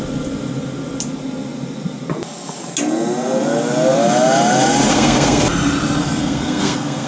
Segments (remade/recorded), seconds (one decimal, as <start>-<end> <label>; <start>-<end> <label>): 0.0-4.9 recorded; 4.9-5.4 remade; 5.4-6.2 recorded; 6.2-7.1 remade